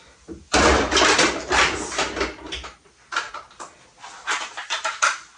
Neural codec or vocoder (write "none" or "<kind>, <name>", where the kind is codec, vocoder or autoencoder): none